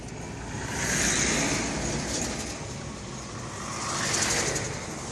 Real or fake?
real